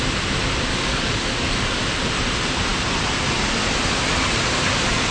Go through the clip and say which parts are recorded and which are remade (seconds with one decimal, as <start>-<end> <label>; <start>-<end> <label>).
0.0-0.7 recorded; 0.7-1.8 remade; 1.8-5.1 recorded